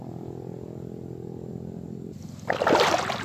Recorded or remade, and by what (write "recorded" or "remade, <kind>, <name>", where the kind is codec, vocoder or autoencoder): recorded